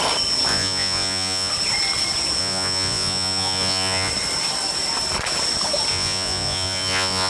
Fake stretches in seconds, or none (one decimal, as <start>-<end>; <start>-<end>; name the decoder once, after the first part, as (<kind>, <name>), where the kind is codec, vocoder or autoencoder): 0.5-1.5 (vocoder, Vocos); 2.4-4.1; 5.9-7.3